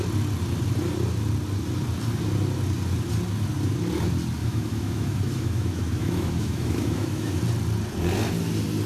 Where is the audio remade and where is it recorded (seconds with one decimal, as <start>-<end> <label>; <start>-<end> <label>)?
0.0-4.4 recorded; 4.4-7.4 remade; 7.4-8.9 recorded